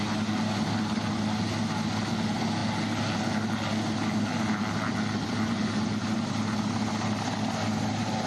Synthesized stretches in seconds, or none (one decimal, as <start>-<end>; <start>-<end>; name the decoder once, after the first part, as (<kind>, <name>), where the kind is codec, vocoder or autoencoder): none